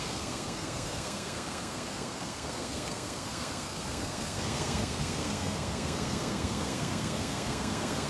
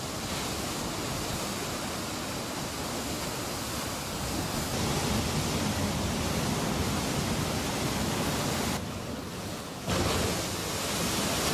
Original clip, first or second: second